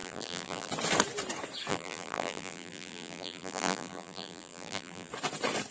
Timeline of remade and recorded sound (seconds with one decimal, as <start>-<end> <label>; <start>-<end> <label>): 0.0-0.7 remade; 0.7-1.7 recorded; 1.7-5.1 remade; 5.1-5.7 recorded